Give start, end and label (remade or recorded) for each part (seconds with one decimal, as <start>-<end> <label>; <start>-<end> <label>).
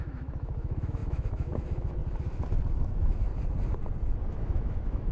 0.0-2.0 remade; 2.0-2.7 recorded; 2.7-3.3 remade; 3.3-4.3 recorded; 4.3-5.1 remade